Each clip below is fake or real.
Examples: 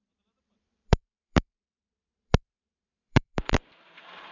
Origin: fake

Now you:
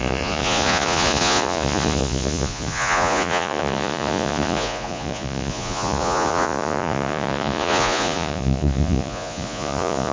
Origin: fake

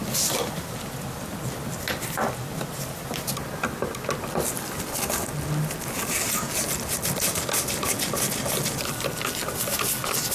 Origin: real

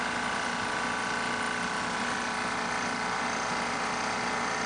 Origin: real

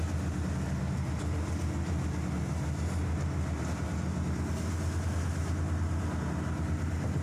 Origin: real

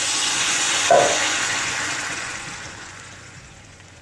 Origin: fake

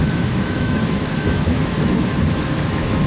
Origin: fake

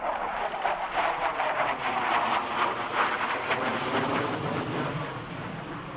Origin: real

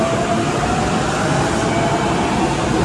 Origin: real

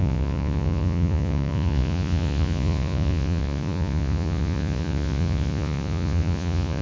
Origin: fake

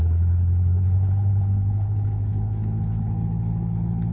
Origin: fake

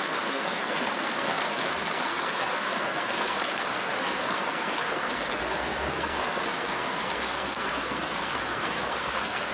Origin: fake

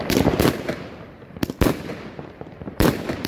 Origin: fake